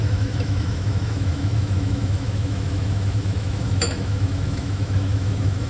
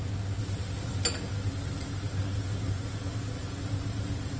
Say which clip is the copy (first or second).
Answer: first